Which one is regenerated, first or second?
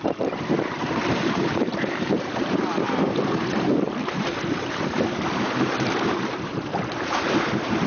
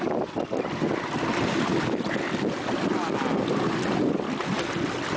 first